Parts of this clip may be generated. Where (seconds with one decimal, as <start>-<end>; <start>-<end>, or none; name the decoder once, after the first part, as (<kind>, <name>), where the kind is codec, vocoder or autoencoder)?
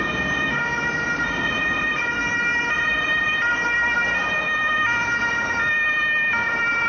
none